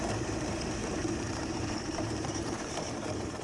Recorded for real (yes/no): no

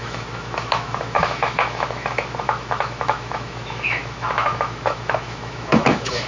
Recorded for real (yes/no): no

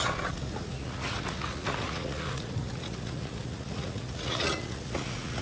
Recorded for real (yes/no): no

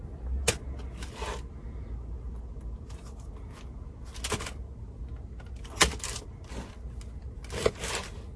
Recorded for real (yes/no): yes